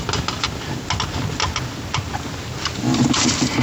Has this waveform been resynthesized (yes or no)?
no